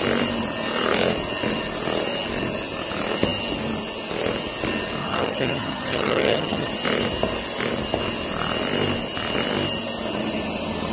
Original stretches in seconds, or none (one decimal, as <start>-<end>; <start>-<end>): 0.0-5.0; 6.7-10.9

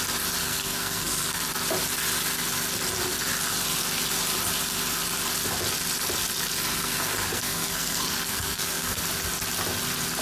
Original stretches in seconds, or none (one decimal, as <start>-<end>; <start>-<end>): 0.0-0.4; 1.4-6.7; 9.1-10.2